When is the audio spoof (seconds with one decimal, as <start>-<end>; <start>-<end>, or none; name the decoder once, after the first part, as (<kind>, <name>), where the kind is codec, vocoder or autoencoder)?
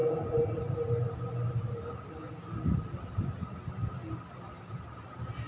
none